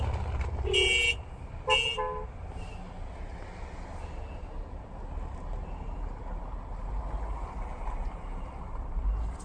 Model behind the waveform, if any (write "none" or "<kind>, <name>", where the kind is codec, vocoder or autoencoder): none